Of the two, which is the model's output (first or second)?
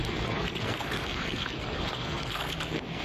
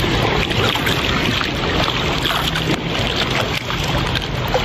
first